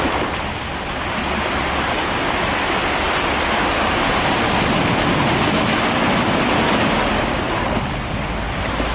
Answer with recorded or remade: recorded